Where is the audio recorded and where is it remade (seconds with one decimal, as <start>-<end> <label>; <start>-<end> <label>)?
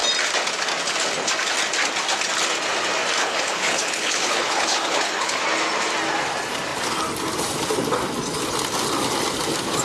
0.0-3.2 recorded; 3.2-5.4 remade; 5.4-9.8 recorded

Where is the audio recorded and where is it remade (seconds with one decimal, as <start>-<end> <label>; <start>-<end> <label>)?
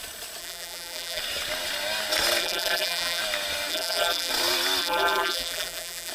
0.0-0.4 recorded; 0.4-1.2 remade; 1.2-2.4 recorded; 2.4-3.2 remade; 3.2-3.7 recorded; 3.7-4.3 remade; 4.3-4.8 recorded; 4.8-6.1 remade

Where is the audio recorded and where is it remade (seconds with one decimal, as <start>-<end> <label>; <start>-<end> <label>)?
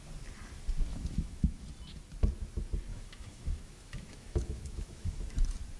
0.0-0.9 recorded; 0.9-1.6 remade; 1.6-2.9 recorded; 2.9-5.3 remade; 5.3-5.8 recorded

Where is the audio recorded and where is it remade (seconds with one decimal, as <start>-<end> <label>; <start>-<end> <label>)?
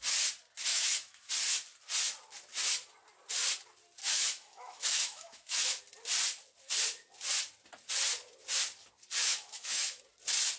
0.0-0.7 recorded; 0.7-1.3 remade; 1.3-4.0 recorded; 4.0-5.8 remade; 5.8-9.2 recorded; 9.2-10.0 remade; 10.0-10.6 recorded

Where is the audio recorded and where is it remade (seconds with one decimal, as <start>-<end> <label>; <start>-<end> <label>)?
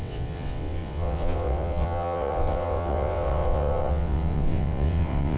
0.0-5.4 remade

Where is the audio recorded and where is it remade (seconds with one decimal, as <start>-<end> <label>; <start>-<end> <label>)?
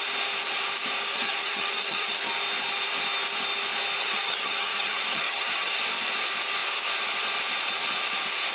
0.0-1.1 recorded; 1.1-2.2 remade; 2.2-4.0 recorded; 4.0-5.8 remade; 5.8-8.5 recorded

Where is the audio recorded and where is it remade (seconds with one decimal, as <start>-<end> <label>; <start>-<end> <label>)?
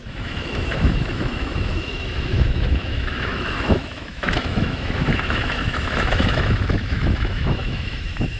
0.0-8.4 remade